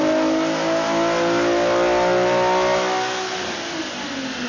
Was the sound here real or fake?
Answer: real